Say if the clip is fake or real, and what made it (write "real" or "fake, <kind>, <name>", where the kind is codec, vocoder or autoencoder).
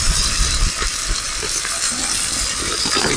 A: real